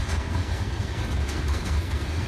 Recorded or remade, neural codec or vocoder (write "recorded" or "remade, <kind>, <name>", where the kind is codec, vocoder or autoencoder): remade, codec, SNAC